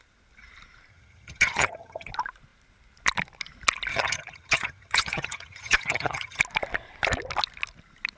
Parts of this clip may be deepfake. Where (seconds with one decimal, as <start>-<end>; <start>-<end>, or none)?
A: 0.9-2.1; 3.9-6.4